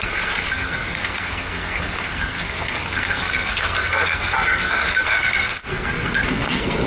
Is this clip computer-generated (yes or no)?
yes